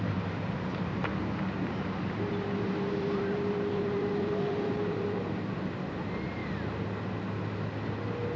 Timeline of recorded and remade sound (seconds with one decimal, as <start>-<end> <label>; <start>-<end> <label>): 0.0-1.1 remade; 1.1-1.7 recorded; 1.7-6.4 remade; 6.4-8.4 recorded